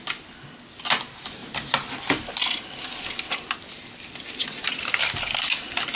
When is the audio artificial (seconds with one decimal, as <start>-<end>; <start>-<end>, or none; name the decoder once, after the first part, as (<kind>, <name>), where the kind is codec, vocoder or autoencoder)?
none

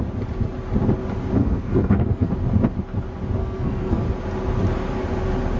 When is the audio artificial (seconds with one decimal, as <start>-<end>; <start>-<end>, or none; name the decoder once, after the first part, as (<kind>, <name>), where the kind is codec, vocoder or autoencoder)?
1.4-2.3 (codec, SNAC); 3.4-4.0

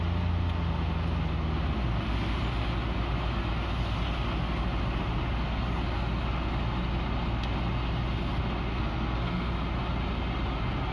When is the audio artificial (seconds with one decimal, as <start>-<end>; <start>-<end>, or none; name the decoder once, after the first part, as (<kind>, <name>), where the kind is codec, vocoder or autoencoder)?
8.7-9.5 (codec, SNAC)

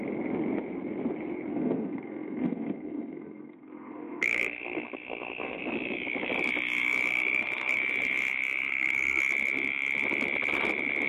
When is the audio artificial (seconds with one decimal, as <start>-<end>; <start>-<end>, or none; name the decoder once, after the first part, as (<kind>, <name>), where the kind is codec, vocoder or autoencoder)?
1.5-5.6 (codec, SNAC); 7.1-7.8; 8.7-9.2

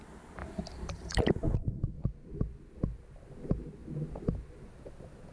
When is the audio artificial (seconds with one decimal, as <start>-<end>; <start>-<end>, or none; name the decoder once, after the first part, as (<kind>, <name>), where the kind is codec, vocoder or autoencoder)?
none

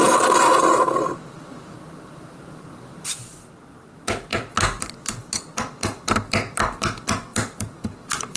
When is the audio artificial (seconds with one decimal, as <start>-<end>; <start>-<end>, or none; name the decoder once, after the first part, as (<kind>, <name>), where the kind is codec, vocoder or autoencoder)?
7.3-8.4 (vocoder, BigVGAN v2)

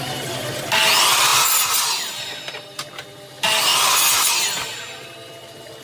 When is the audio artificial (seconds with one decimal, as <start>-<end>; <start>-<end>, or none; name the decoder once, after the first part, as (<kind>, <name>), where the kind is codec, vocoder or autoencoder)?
none